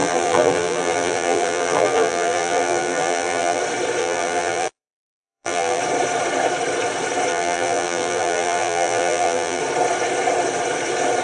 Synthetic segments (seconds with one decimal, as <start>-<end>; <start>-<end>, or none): 0.0-3.6; 4.0-5.8; 7.3-9.6